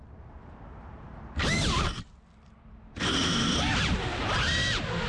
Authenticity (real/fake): real